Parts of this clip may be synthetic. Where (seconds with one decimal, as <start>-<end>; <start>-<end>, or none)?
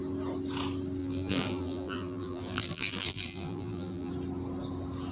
1.0-4.1